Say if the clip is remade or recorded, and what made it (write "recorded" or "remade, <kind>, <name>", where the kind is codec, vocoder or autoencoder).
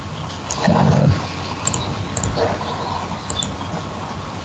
recorded